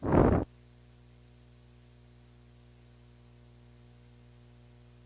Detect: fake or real real